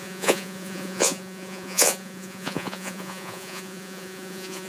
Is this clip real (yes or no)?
no